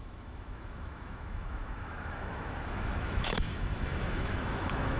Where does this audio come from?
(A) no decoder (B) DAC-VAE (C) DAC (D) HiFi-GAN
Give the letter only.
B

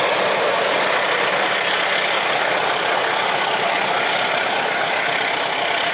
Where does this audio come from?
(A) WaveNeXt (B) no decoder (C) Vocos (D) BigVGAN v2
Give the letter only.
B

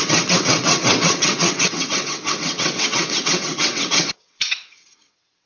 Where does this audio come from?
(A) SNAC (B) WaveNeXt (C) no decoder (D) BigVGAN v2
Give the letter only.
B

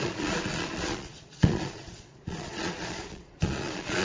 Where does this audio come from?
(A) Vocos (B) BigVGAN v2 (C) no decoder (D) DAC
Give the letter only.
A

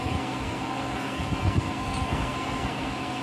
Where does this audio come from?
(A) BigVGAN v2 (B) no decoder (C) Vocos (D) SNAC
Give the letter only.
D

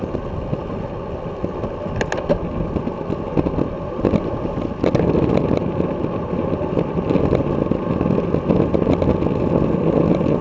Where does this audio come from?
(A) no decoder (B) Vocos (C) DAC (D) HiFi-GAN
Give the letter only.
A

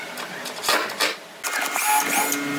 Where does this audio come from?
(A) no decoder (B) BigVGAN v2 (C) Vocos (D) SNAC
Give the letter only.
A